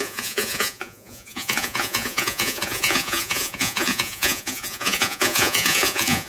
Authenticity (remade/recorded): remade